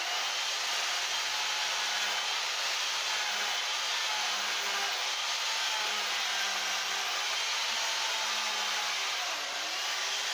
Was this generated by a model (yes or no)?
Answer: no